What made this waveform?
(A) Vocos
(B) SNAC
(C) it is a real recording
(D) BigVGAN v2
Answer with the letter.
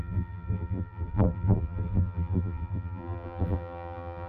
D